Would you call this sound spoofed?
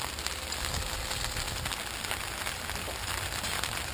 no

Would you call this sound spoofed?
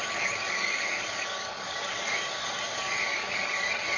yes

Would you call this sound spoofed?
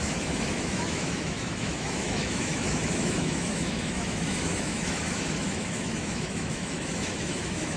yes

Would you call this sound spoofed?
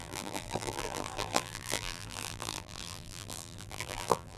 yes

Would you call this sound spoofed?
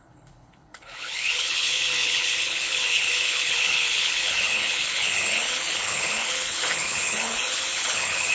yes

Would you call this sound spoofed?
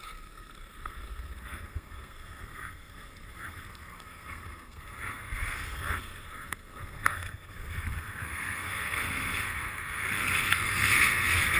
yes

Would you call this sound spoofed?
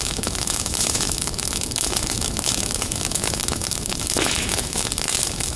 yes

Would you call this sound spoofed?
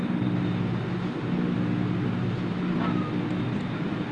no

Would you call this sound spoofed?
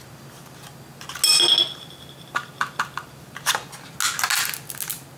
no